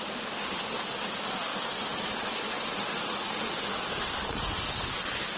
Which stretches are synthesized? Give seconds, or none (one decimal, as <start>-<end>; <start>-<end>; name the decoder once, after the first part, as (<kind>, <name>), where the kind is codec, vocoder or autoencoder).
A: none